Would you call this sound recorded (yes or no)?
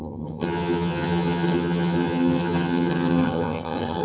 no